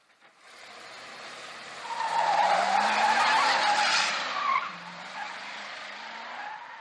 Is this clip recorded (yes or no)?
no